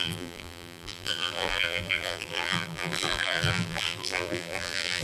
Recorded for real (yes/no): no